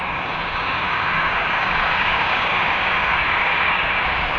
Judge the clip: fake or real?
fake